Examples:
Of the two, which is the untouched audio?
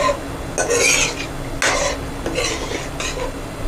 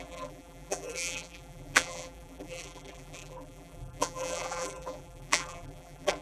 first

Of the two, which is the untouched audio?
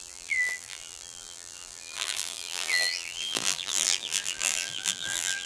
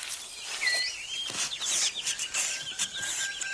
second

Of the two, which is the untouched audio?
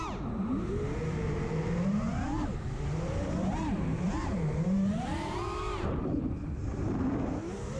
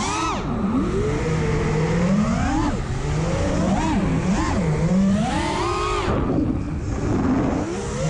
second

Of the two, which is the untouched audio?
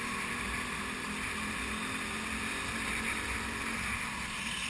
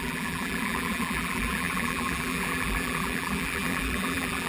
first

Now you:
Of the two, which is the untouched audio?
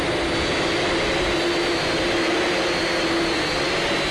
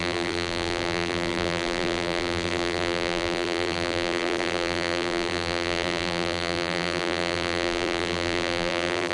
first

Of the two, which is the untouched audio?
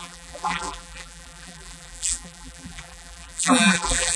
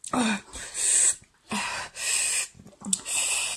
second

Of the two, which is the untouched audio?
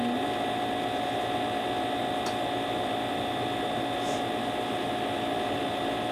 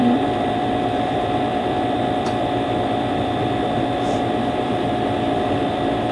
first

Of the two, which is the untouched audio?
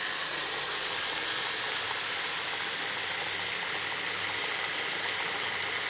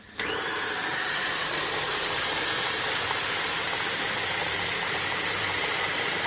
first